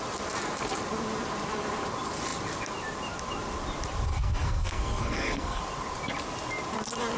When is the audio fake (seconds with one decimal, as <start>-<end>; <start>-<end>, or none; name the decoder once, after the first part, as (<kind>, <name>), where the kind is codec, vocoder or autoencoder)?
4.1-5.6 (codec, SNAC)